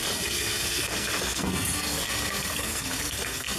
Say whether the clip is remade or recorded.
remade